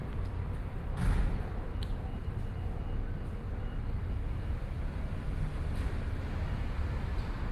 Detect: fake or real real